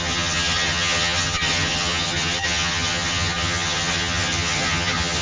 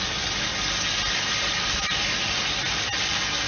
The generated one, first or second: first